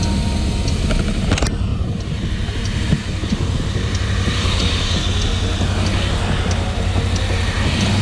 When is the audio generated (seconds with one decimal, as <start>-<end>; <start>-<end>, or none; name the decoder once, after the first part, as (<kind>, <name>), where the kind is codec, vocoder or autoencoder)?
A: 1.7-5.0 (vocoder, BigVGAN v2)